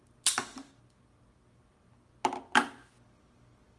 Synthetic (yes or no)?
no